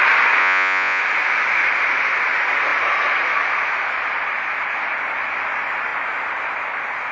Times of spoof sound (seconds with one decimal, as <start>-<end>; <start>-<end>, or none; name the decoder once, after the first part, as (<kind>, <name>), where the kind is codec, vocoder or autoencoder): 0.4-1.0 (vocoder, Vocos)